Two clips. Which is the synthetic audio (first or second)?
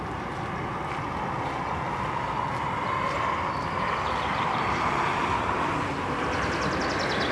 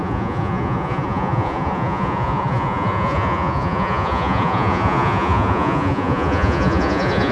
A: second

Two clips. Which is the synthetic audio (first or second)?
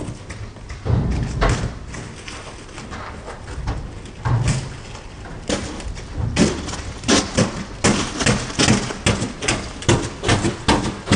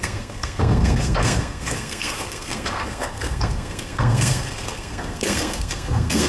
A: second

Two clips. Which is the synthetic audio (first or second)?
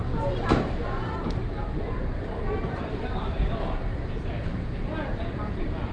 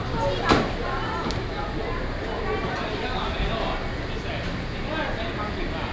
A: first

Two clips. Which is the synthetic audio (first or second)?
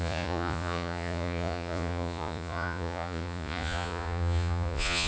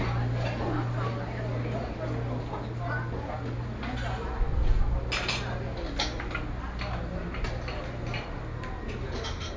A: first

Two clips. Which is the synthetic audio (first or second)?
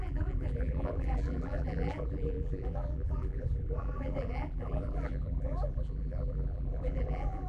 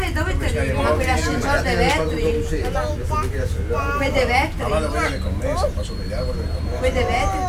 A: first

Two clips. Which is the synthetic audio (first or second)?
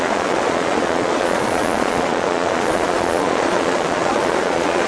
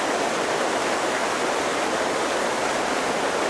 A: first